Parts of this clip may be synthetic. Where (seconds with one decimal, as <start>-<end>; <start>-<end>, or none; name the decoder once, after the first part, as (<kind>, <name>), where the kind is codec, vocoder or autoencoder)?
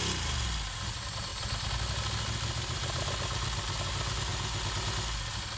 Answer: none